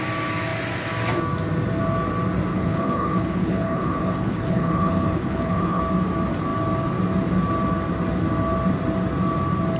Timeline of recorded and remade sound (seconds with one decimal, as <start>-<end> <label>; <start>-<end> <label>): 0.0-2.5 recorded; 2.5-5.8 remade; 5.8-9.8 recorded